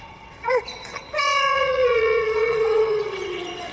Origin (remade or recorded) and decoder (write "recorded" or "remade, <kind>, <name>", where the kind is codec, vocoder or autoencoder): remade, vocoder, WaveNeXt